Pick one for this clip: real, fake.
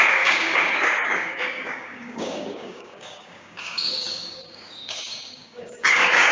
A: fake